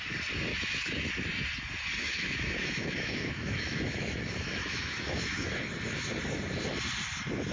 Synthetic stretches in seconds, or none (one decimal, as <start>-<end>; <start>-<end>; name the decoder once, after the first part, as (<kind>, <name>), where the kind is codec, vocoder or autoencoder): 0.5-1.1 (autoencoder, DAC-VAE); 2.0-5.6